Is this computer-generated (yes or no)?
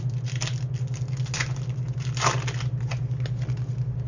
no